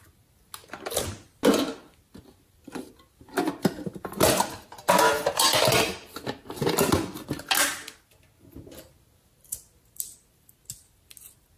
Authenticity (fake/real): real